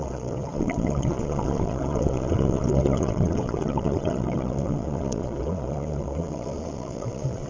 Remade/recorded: remade